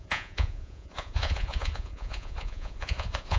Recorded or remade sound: remade